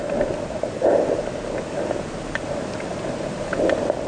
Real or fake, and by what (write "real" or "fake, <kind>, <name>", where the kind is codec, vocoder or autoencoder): real